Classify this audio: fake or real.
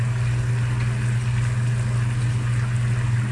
real